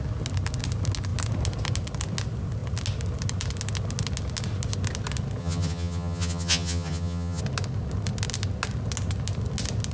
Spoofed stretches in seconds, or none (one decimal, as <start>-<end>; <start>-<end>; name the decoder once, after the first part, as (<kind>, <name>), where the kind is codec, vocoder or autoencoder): 5.4-7.4 (vocoder, HiFi-GAN)